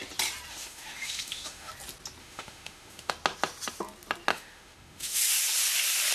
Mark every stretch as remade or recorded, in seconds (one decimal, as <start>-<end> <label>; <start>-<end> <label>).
0.0-0.5 recorded; 0.5-1.7 remade; 1.7-2.2 recorded; 2.2-3.1 remade; 3.1-4.3 recorded; 4.3-5.2 remade; 5.2-6.1 recorded